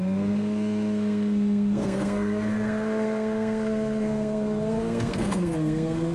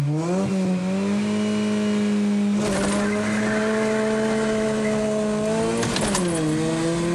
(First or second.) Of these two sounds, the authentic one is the second